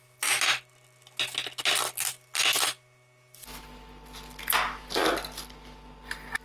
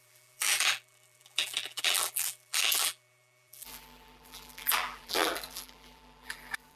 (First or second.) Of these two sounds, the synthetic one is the second